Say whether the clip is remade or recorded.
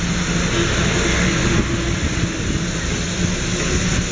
recorded